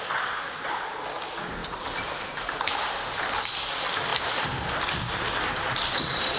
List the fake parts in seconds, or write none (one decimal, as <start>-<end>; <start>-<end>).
1.6-2.7